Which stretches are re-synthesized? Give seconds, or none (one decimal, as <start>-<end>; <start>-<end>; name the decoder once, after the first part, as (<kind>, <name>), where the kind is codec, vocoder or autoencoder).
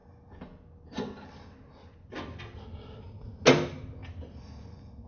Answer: none